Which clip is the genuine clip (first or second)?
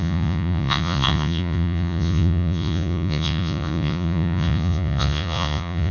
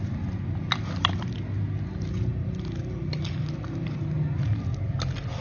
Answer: second